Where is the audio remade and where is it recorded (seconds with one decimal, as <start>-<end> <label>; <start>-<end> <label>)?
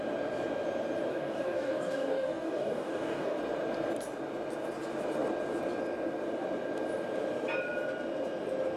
0.0-1.1 recorded; 1.1-3.4 remade; 3.4-8.8 recorded